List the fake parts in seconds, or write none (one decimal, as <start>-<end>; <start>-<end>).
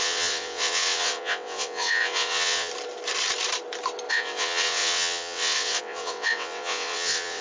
0.0-2.7; 4.1-7.4